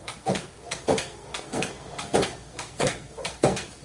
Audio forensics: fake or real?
fake